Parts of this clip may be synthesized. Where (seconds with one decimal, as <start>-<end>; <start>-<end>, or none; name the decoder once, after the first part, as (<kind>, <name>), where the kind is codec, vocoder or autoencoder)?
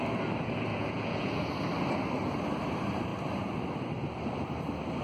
0.7-1.5 (vocoder, Vocos)